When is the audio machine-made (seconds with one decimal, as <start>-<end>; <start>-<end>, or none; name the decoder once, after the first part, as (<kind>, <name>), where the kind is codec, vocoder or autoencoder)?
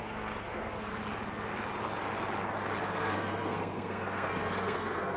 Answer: 0.0-0.9 (codec, SNAC); 2.8-5.2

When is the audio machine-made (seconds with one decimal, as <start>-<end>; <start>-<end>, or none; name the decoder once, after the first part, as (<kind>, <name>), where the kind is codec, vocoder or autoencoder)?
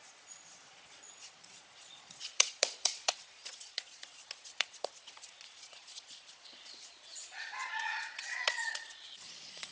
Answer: 0.0-9.7 (vocoder, Vocos)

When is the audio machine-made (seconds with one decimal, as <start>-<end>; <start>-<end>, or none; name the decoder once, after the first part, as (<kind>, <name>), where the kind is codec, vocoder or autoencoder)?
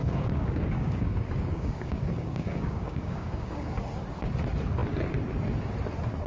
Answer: 0.0-3.8 (codec, DAC)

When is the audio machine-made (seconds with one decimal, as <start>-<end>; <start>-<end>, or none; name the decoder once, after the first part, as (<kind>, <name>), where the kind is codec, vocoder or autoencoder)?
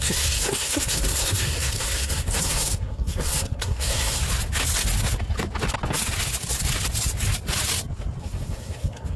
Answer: 0.0-4.2 (codec, SNAC); 8.2-9.2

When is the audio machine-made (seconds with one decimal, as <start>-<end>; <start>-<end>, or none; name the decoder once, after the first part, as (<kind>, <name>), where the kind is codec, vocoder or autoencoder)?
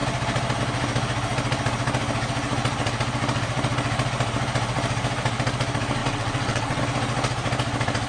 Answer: 6.0-6.8 (vocoder, WaveNeXt)